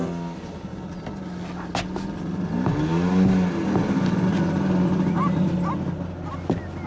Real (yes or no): yes